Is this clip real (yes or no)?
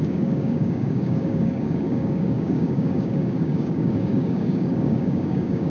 no